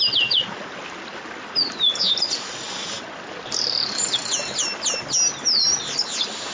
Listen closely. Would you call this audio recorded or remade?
recorded